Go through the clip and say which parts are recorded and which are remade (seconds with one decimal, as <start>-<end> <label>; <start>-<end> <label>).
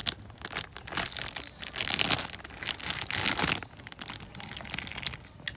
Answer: 0.0-5.6 recorded